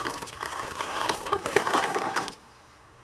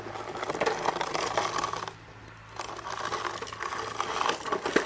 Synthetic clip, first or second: first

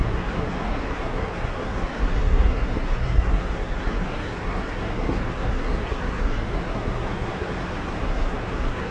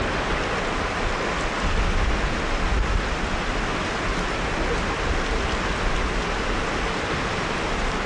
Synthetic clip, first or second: first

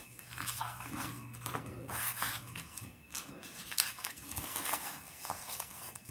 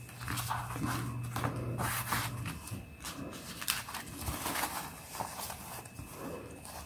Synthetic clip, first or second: first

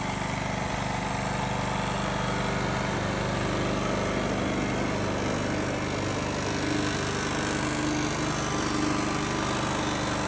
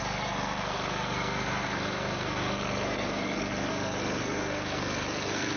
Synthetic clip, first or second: second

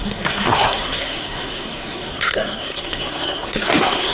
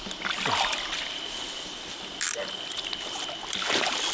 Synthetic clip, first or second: first